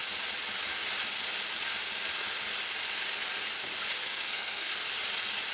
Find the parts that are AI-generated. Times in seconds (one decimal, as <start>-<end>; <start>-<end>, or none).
4.0-4.7